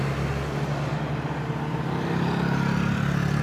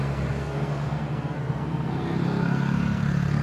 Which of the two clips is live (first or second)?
first